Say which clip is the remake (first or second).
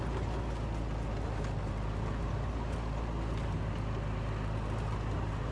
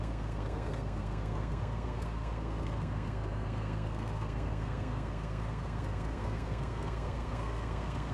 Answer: second